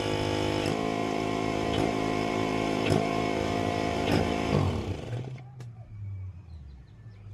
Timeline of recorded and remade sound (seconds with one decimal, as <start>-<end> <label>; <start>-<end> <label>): 0.0-1.0 recorded; 1.0-5.4 remade; 5.4-7.3 recorded